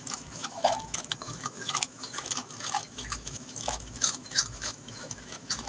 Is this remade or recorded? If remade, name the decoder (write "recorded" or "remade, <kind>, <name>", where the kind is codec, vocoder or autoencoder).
remade, autoencoder, DAC-VAE